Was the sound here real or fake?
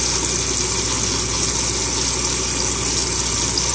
real